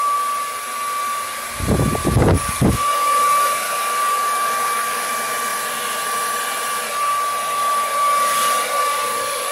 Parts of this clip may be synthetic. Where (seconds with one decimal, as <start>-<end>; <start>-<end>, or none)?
2.0-5.1; 8.8-9.5